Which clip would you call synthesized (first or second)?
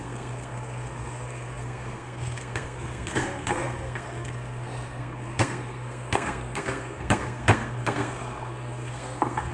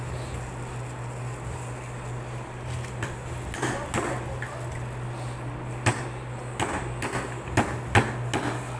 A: first